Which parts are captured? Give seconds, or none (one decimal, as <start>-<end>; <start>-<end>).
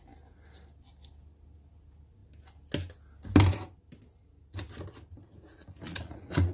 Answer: 0.0-5.5